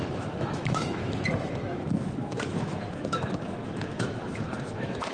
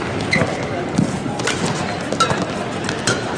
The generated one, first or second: first